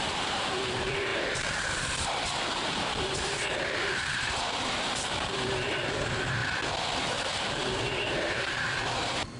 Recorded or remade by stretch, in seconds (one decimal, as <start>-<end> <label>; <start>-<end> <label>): 0.0-6.4 remade; 6.4-7.0 recorded; 7.0-9.4 remade